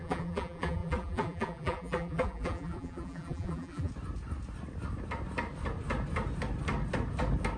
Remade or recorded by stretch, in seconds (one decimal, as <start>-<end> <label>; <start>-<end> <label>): 0.0-3.9 remade; 3.9-7.6 recorded